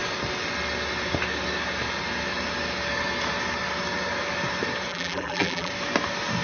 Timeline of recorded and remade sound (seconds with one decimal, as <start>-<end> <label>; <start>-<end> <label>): 0.0-4.9 recorded; 4.9-5.7 remade; 5.7-6.4 recorded